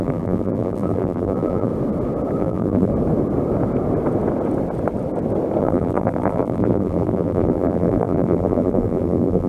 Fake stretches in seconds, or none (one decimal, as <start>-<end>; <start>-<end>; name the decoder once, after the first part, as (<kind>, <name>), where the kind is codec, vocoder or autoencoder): 0.0-1.7 (vocoder, BigVGAN v2); 2.4-2.9; 5.6-9.5